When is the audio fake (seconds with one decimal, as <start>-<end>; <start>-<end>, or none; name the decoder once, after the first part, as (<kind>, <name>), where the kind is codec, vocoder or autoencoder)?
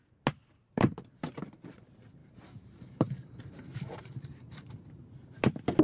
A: 2.2-4.7 (vocoder, BigVGAN v2)